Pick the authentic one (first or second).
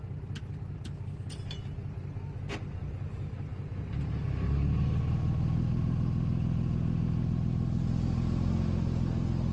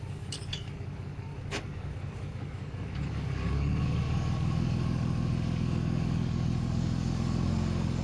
first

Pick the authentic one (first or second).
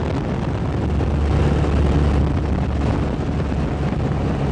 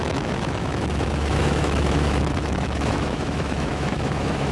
first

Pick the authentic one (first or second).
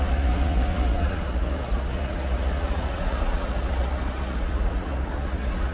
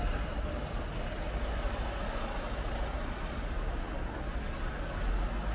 second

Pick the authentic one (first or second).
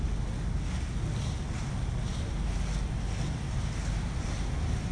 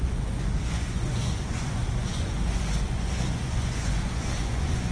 first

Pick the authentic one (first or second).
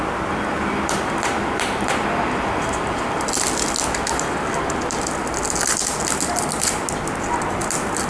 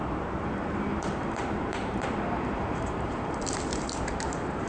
first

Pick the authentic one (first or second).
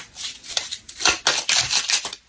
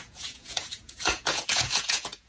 first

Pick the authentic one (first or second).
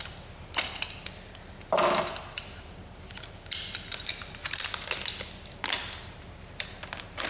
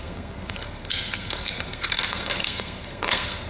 first